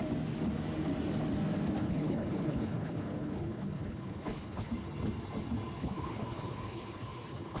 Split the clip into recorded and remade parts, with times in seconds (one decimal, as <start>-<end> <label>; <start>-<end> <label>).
0.0-1.8 recorded; 1.8-4.7 remade; 4.7-5.8 recorded; 5.8-7.6 remade